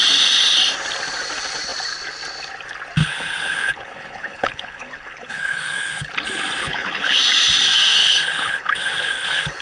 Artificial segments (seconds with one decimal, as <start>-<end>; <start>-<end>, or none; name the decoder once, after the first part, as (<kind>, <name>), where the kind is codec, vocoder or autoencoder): 3.0-6.1 (codec, HILCodec); 6.6-7.2; 8.0-9.6